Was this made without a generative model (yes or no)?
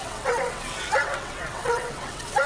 no